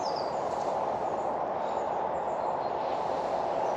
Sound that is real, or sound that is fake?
real